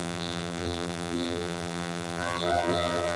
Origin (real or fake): fake